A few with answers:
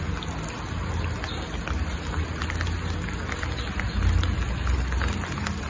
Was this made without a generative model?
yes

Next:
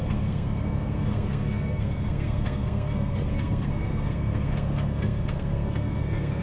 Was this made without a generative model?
no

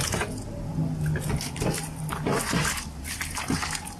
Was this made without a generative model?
yes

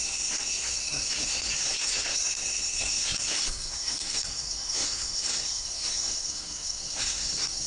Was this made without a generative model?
no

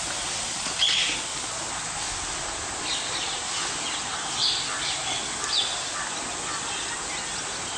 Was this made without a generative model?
yes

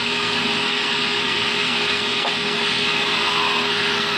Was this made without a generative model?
no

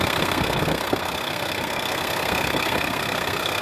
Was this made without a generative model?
no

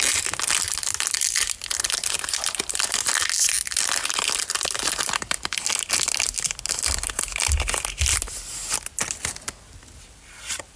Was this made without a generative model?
yes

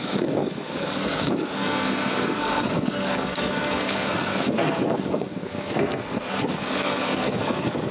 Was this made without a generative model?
no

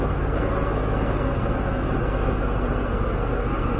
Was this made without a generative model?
no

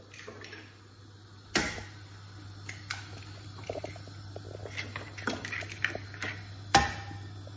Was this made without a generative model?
yes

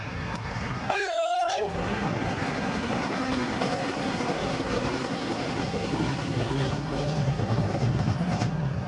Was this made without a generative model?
no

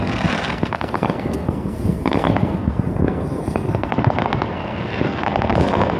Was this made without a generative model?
no